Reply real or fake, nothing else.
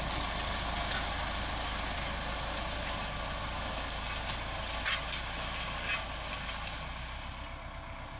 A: real